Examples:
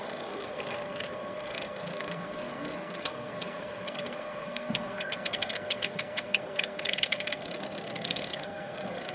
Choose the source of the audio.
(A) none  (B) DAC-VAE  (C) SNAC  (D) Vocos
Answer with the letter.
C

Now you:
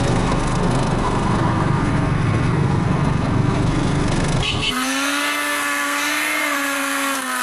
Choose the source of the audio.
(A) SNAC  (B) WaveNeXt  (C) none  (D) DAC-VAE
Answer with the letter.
A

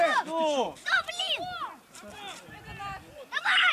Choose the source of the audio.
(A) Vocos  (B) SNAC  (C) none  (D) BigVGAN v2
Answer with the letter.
C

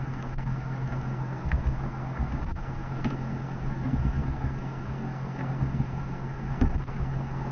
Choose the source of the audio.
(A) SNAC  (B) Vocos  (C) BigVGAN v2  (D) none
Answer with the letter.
A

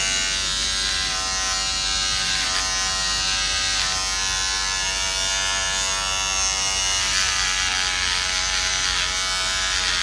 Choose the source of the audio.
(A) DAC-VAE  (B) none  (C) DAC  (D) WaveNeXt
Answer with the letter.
B